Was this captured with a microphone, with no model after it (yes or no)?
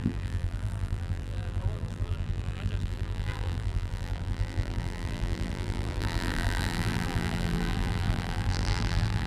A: no